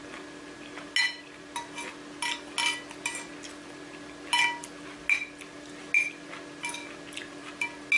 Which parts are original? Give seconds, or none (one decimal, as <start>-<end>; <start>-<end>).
0.0-8.0

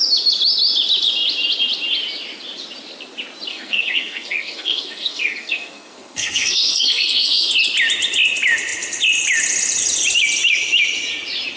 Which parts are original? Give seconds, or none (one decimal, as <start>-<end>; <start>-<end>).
0.0-3.5; 7.5-11.6

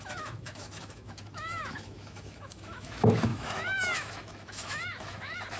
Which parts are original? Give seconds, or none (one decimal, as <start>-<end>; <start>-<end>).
none

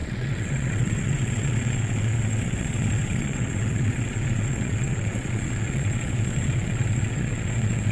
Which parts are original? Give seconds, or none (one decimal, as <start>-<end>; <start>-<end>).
none

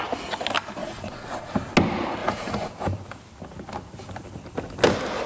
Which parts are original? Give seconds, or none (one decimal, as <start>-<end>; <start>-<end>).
0.0-0.8; 1.5-2.2; 2.7-5.3

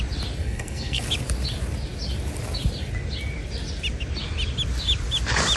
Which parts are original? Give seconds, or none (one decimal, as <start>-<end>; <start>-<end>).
0.0-0.4; 1.0-5.6

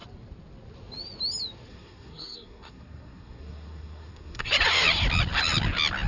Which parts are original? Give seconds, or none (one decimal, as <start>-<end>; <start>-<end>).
0.0-1.7; 4.5-6.1

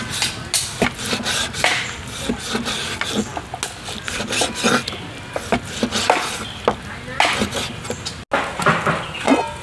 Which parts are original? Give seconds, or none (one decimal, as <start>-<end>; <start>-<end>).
0.0-9.6